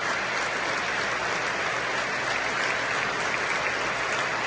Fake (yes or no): no